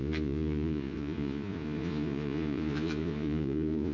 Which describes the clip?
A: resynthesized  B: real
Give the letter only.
A